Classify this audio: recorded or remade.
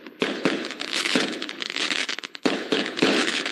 remade